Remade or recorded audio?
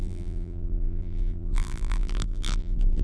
remade